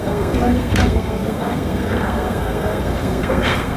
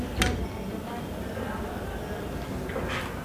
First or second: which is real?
second